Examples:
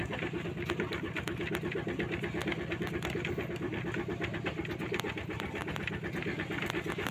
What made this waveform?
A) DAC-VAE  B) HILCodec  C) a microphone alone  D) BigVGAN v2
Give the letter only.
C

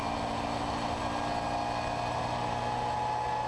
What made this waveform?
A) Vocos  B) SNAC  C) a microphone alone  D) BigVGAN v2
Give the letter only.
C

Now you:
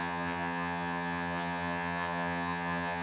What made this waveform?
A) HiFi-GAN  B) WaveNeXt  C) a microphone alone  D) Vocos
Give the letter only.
A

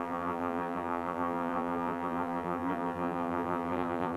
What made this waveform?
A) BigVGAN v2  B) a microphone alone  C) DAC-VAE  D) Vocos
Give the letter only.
A